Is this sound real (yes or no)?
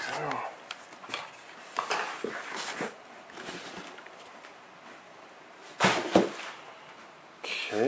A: yes